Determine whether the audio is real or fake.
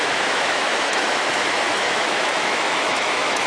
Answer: fake